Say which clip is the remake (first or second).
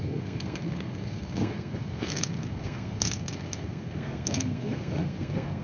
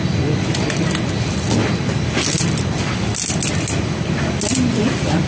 first